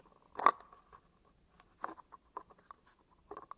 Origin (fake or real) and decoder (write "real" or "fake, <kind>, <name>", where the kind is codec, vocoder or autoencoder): real